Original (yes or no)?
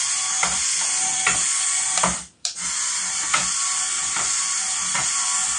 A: no